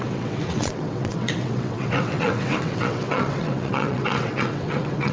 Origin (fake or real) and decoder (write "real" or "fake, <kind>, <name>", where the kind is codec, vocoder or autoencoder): fake, vocoder, WaveNeXt